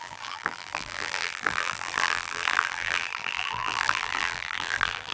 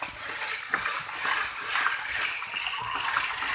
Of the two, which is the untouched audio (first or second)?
second